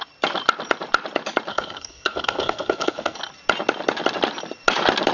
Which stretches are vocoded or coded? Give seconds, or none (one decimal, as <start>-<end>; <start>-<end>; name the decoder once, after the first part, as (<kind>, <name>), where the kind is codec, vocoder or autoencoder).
1.5-3.2 (codec, SNAC)